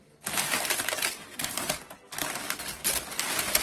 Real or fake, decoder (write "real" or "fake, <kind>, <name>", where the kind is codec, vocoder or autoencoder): real